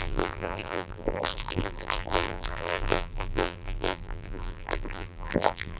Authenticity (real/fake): fake